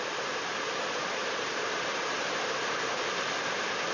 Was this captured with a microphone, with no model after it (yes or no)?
yes